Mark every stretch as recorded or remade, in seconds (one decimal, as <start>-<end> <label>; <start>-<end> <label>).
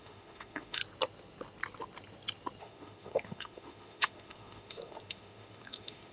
0.0-0.8 remade; 0.8-2.6 recorded; 2.6-6.1 remade